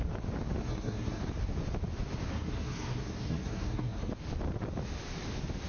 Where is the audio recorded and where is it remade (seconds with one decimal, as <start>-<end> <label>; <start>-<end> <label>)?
0.0-0.6 recorded; 0.6-1.2 remade; 1.2-2.3 recorded; 2.3-4.1 remade; 4.1-5.7 recorded